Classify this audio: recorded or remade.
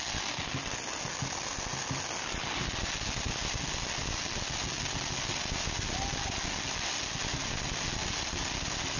recorded